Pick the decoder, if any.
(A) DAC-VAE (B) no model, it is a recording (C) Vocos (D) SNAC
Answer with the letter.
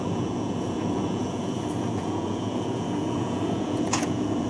C